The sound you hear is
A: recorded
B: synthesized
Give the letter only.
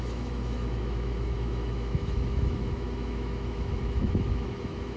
B